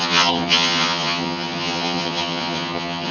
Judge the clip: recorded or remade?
remade